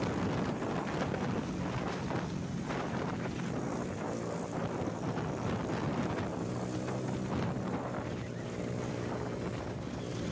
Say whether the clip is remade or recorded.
recorded